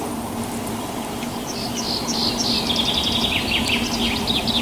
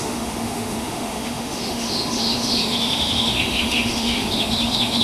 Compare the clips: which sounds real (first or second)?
first